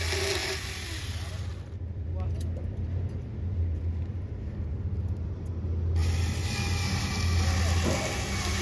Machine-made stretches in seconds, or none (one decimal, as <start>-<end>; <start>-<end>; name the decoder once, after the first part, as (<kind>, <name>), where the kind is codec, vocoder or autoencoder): 0.4-5.4 (vocoder, BigVGAN v2)